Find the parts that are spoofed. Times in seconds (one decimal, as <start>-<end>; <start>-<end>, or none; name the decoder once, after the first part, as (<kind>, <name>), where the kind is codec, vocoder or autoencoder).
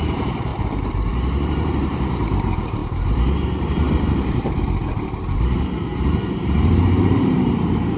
0.0-8.0 (vocoder, BigVGAN v2)